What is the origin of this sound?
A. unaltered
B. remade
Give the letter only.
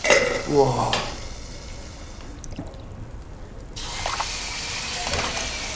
A